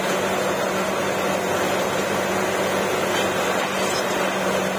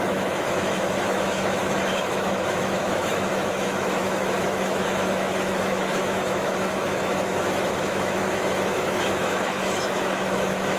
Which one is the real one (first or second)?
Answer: first